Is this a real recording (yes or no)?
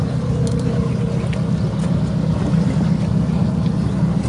yes